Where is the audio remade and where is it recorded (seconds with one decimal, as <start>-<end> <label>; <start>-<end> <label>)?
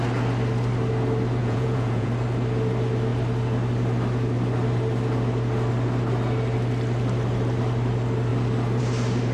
0.0-1.4 recorded; 1.4-2.1 remade; 2.1-9.3 recorded